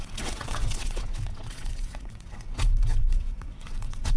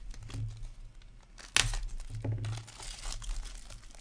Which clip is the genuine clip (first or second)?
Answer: second